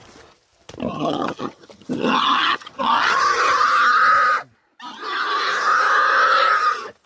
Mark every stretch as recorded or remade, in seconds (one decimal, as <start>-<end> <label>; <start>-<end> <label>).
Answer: 0.0-0.9 recorded; 0.9-3.2 remade; 3.2-7.1 recorded